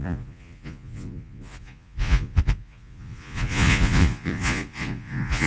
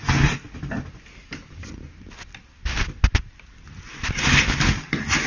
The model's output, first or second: first